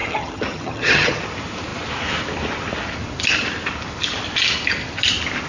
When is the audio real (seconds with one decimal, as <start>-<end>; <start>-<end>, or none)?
1.2-5.5

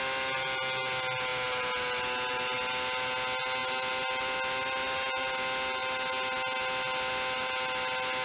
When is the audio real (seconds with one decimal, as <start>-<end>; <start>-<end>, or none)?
0.0-8.2

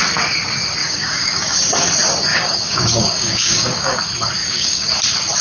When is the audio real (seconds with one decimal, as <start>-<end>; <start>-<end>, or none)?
0.0-0.8; 1.7-2.3; 4.0-4.4; 4.9-5.4

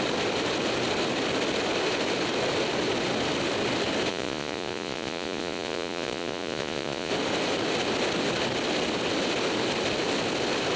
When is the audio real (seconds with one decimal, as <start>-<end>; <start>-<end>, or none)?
0.0-4.1; 7.1-10.8

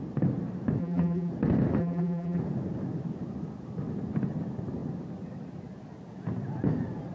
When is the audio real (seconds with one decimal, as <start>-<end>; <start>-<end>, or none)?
0.0-0.8; 1.3-1.8; 2.4-7.1

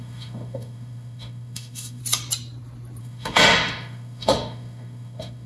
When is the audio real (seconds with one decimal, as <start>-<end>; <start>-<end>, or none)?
2.0-3.0